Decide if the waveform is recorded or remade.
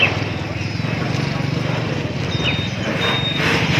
recorded